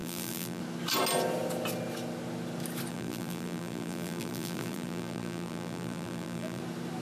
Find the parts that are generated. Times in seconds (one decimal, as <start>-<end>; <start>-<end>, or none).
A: 0.0-0.6; 2.9-6.6